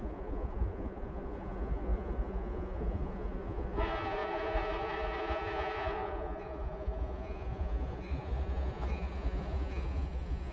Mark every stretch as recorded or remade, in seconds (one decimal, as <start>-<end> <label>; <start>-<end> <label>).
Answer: 0.0-10.5 remade